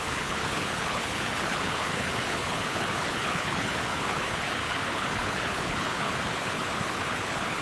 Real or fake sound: fake